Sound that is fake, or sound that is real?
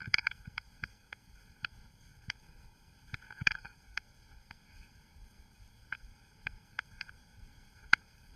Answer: fake